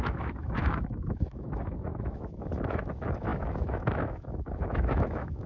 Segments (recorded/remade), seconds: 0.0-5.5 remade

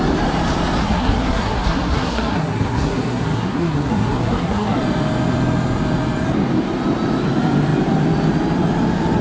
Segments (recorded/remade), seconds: 0.0-0.8 recorded; 0.8-4.8 remade; 4.8-9.2 recorded

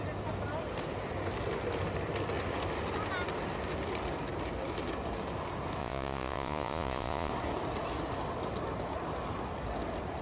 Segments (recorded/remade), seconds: 0.0-5.8 recorded; 5.8-7.3 remade; 7.3-10.2 recorded

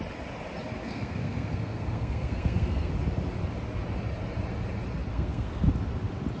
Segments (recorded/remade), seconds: 0.0-0.8 recorded; 0.8-2.9 remade; 2.9-5.1 recorded; 5.1-5.7 remade; 5.7-6.4 recorded

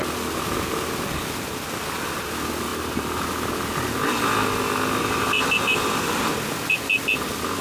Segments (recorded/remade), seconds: 0.0-2.7 recorded; 2.7-3.3 remade; 3.3-7.6 recorded

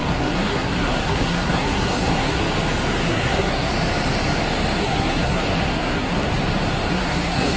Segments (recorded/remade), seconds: 0.0-2.4 remade; 2.4-3.0 recorded; 3.0-3.7 remade; 3.7-4.8 recorded; 4.8-6.4 remade; 6.4-6.9 recorded; 6.9-7.6 remade

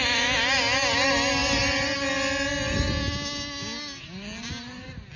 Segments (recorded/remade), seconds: 0.0-5.2 recorded